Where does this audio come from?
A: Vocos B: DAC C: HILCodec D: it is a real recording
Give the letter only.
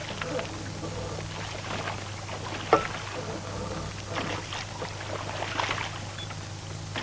D